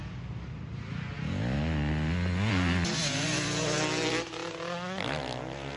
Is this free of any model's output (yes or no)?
yes